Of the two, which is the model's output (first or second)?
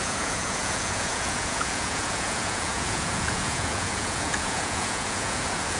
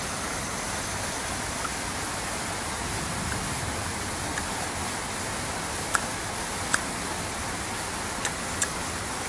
first